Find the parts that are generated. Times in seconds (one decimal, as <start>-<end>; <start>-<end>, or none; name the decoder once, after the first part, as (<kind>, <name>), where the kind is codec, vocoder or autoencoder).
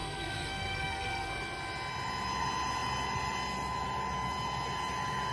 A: 0.0-1.3 (codec, SNAC)